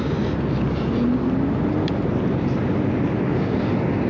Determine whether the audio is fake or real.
real